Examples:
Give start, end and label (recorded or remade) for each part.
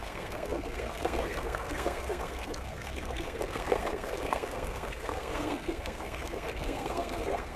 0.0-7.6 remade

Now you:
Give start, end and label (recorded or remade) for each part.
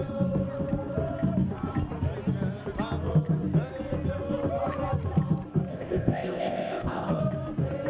0.0-5.7 recorded; 5.7-7.2 remade; 7.2-7.9 recorded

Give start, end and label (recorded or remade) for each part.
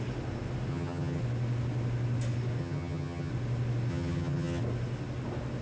0.0-0.7 recorded; 0.7-1.2 remade; 1.2-2.6 recorded; 2.6-3.3 remade; 3.3-3.9 recorded; 3.9-4.6 remade; 4.6-5.6 recorded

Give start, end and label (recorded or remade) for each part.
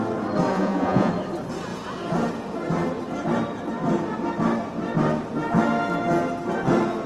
0.0-0.5 recorded; 0.5-1.1 remade; 1.1-7.1 recorded